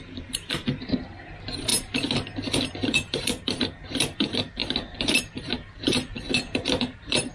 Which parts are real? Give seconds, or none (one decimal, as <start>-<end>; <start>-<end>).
1.7-2.7; 4.6-5.2; 5.9-6.8